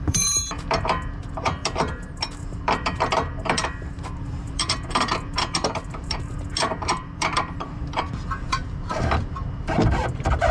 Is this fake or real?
fake